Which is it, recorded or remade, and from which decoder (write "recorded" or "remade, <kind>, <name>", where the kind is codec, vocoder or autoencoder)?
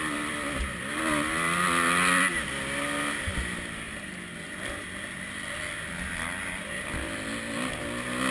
recorded